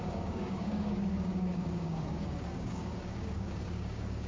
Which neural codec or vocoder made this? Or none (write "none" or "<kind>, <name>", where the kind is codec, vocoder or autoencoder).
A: codec, DAC